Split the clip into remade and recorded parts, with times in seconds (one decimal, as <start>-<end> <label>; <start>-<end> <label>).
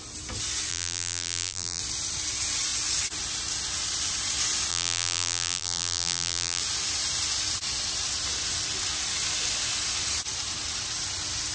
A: 0.0-0.7 recorded; 0.7-1.8 remade; 1.8-4.7 recorded; 4.7-6.6 remade; 6.6-11.5 recorded